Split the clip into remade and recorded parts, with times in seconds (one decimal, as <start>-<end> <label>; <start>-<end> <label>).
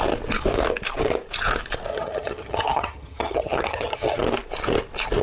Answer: 0.0-1.9 recorded; 1.9-4.2 remade; 4.2-5.2 recorded